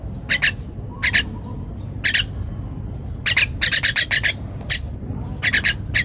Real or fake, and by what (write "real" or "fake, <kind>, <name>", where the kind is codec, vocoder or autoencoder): real